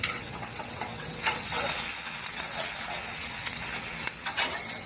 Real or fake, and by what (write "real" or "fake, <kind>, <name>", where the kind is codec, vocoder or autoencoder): fake, vocoder, WaveNeXt